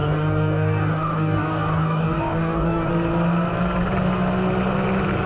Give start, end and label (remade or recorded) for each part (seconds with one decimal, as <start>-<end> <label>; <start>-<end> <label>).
0.0-2.9 remade; 2.9-5.3 recorded